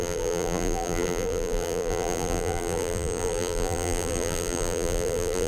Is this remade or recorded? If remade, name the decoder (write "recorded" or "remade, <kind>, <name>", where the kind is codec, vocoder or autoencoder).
remade, vocoder, BigVGAN v2